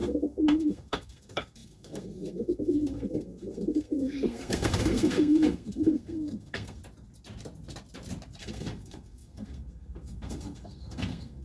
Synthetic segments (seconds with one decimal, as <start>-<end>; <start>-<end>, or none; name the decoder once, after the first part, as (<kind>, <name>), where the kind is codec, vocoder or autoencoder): 0.0-6.8 (codec, SNAC); 8.4-11.4